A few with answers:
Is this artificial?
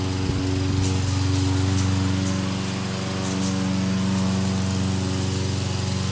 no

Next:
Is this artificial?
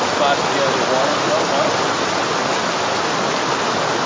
no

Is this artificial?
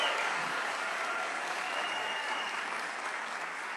yes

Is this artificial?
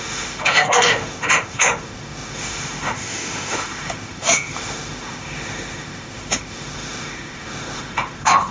yes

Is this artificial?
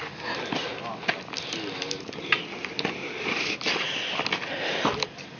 no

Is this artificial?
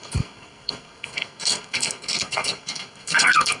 yes